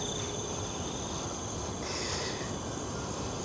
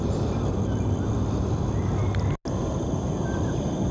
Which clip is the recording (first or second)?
second